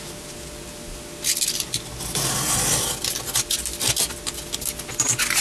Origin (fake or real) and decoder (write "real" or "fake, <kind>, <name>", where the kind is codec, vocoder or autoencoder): real